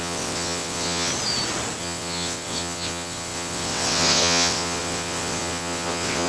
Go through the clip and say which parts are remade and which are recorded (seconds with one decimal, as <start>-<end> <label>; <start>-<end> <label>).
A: 0.0-1.1 remade; 1.1-1.8 recorded; 1.8-6.3 remade